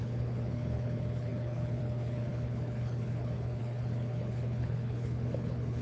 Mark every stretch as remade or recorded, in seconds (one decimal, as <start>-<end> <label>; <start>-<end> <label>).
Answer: 0.0-5.8 remade